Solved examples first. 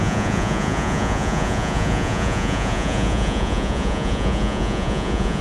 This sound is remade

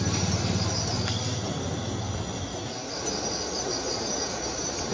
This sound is recorded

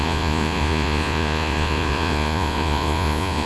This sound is remade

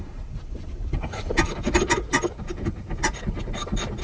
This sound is recorded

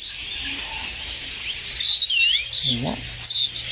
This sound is recorded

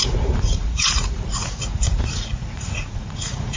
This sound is remade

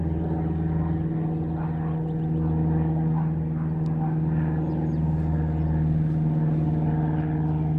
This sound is recorded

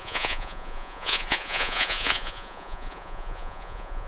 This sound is remade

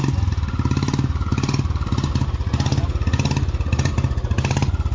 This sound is recorded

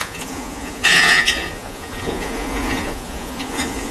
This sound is remade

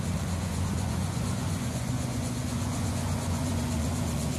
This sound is remade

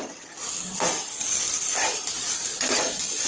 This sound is recorded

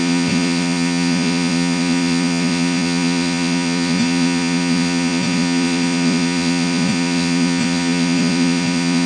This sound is remade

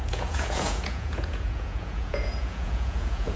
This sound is remade